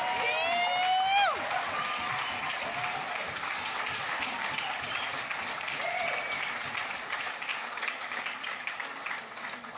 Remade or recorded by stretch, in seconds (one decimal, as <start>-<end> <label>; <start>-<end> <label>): 0.0-7.5 recorded; 7.5-9.0 remade; 9.0-9.8 recorded